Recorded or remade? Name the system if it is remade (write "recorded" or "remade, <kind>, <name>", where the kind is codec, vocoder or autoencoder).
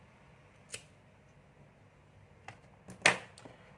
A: recorded